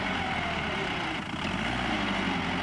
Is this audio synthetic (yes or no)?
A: no